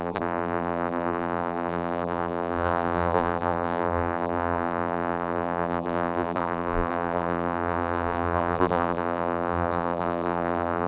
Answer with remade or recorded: remade